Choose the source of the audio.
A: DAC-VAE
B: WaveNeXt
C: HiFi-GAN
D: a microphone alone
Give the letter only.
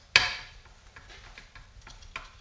D